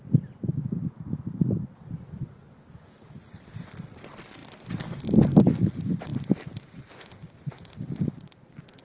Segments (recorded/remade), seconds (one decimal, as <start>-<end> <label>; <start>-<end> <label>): 0.0-6.1 recorded; 6.1-6.8 remade; 6.8-8.8 recorded